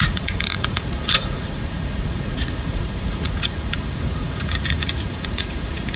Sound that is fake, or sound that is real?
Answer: fake